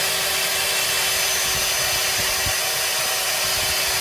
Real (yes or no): yes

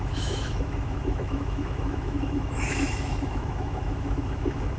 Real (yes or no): no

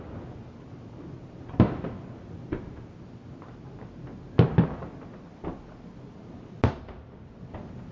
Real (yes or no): yes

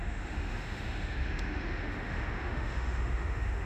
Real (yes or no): no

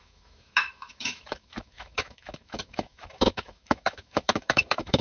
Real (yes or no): no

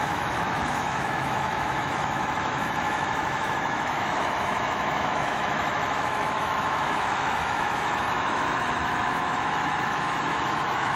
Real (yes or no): no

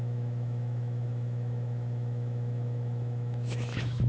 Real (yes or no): no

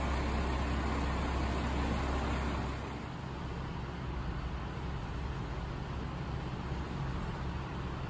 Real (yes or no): yes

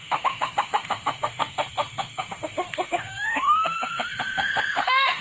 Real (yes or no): no